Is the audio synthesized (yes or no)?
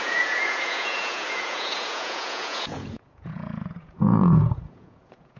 yes